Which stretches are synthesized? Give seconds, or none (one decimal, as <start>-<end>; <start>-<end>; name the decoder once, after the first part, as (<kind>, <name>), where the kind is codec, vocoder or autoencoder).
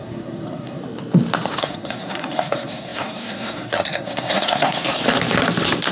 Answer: 0.0-0.8 (codec, SNAC); 1.6-5.0